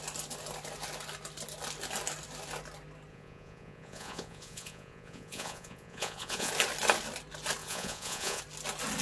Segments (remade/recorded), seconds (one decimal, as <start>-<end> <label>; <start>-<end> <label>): 0.0-3.1 recorded; 3.1-6.5 remade; 6.5-7.6 recorded; 7.6-8.4 remade; 8.4-9.0 recorded